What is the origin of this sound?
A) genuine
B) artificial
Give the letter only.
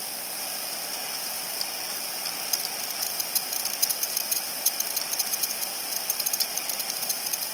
B